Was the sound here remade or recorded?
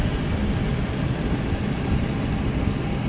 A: recorded